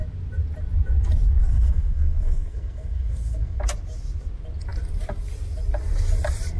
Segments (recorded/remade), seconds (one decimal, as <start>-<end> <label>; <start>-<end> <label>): 0.0-1.4 recorded; 1.4-3.6 remade; 3.6-6.6 recorded